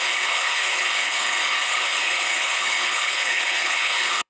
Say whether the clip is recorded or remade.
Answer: remade